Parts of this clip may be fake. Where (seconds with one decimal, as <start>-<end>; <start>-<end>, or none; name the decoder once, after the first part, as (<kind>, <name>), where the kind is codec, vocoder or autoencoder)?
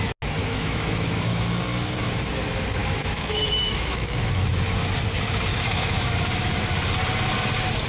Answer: 0.4-1.6 (autoencoder, DAC-VAE); 2.8-4.5; 5.5-6.1